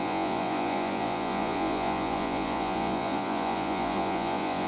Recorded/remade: remade